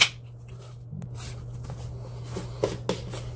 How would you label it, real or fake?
real